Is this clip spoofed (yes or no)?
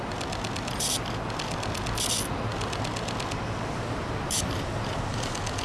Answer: no